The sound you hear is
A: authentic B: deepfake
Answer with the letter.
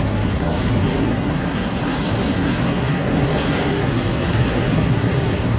B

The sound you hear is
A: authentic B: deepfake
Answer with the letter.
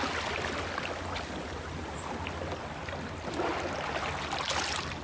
A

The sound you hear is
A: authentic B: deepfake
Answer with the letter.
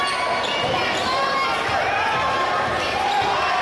A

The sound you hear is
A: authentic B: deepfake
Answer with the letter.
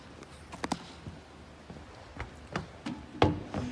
A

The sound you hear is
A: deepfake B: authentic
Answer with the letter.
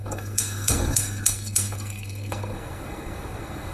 A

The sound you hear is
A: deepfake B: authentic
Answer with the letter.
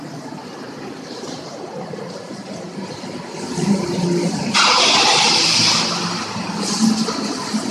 B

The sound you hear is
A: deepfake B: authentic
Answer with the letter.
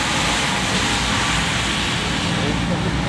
B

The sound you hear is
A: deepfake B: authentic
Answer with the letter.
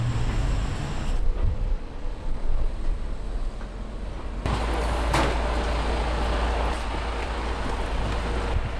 B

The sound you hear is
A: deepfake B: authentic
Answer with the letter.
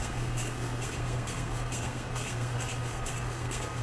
A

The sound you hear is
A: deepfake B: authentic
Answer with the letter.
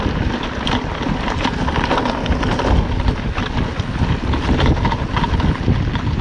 B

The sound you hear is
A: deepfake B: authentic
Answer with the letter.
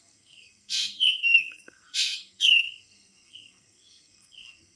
A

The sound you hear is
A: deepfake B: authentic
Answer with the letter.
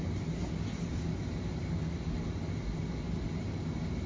B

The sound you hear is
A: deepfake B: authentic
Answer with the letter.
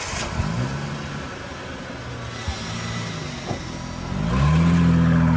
B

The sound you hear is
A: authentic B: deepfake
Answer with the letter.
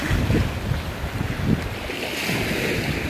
A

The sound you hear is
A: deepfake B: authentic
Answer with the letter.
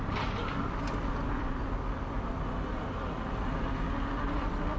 B